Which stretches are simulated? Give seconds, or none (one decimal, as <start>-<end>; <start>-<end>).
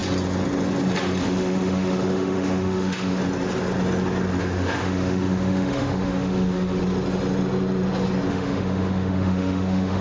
1.2-3.2; 4.4-6.8; 8.3-10.0